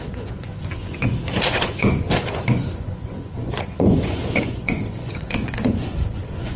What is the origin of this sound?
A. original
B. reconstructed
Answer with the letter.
B